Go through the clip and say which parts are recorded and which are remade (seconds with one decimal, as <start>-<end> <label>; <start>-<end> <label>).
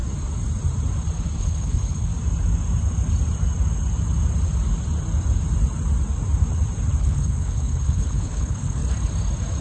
0.0-1.4 recorded; 1.4-2.1 remade; 2.1-7.0 recorded; 7.0-8.8 remade; 8.8-9.6 recorded